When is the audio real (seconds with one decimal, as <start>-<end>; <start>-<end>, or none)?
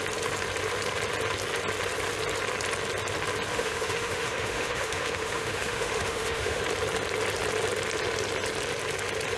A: 0.0-3.5; 6.6-9.4